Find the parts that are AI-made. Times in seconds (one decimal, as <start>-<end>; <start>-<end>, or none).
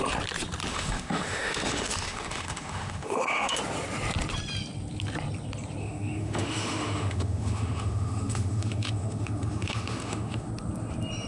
0.7-3.6; 5.8-10.5